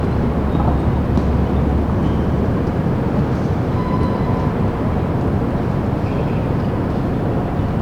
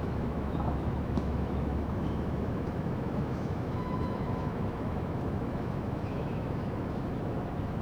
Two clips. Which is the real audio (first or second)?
first